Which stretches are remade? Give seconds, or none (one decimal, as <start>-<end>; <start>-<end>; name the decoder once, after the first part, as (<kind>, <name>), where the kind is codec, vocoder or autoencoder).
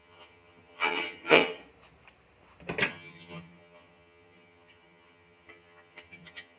0.0-1.6 (vocoder, HiFi-GAN); 2.9-6.6